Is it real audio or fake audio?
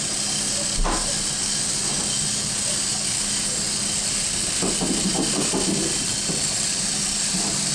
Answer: real